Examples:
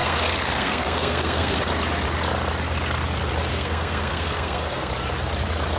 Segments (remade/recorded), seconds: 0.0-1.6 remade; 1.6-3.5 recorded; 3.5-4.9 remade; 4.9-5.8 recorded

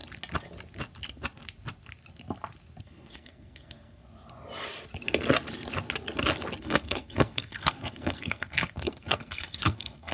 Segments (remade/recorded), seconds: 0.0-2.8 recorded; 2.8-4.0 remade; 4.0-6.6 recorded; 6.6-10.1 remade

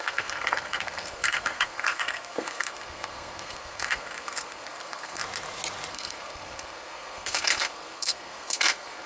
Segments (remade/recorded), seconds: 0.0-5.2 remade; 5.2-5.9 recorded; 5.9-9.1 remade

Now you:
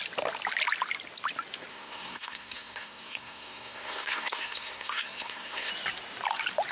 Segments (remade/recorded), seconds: 0.0-1.7 recorded; 1.7-5.7 remade; 5.7-6.7 recorded

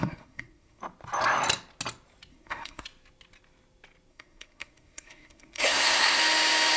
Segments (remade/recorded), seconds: 0.0-0.8 remade; 0.8-2.3 recorded; 2.3-2.8 remade; 2.8-4.1 recorded; 4.1-6.2 remade; 6.2-6.8 recorded